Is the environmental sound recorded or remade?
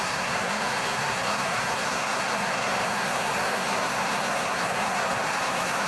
remade